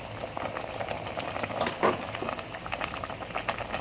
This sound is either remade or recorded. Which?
recorded